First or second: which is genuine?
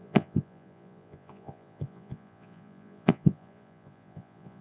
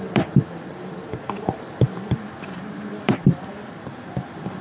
second